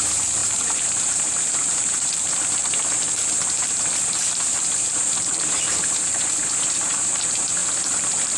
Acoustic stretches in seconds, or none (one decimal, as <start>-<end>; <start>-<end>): 7.6-8.4